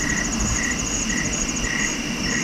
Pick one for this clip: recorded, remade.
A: recorded